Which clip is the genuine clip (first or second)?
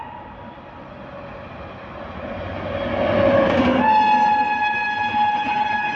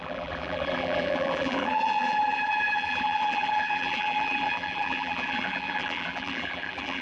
first